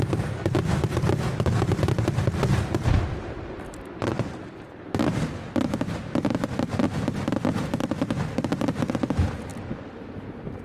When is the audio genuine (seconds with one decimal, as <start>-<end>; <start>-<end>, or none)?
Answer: 0.0-10.6